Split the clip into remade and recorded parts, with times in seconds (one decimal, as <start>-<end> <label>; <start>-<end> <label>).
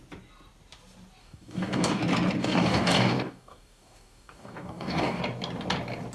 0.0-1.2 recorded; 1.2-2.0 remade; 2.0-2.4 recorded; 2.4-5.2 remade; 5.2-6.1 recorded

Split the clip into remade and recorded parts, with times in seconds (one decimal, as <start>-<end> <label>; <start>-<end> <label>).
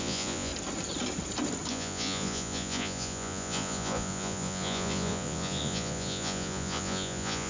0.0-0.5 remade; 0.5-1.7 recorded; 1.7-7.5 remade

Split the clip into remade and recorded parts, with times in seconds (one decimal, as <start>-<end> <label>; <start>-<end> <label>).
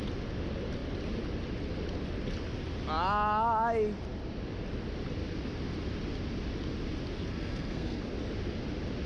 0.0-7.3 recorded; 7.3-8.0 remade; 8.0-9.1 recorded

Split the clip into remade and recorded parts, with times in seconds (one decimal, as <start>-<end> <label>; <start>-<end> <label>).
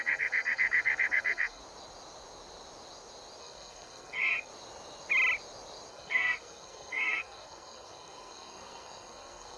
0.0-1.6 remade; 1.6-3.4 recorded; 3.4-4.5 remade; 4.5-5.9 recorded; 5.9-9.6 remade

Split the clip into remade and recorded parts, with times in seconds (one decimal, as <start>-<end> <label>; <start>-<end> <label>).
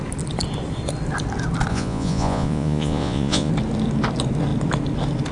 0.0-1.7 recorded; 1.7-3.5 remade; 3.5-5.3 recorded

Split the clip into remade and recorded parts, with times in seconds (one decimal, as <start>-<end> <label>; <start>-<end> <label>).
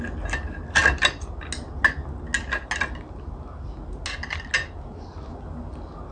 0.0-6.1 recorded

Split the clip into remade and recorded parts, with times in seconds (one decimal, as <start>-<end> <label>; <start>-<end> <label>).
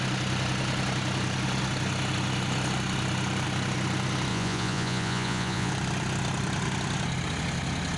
0.0-4.3 recorded; 4.3-5.7 remade; 5.7-8.0 recorded